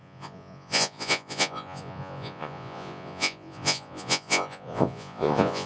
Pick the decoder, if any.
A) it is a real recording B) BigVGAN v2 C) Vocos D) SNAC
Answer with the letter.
C